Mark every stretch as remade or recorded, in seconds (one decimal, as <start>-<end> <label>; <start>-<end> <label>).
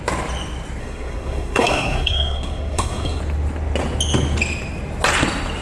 0.0-0.8 recorded; 0.8-3.2 remade; 3.2-5.6 recorded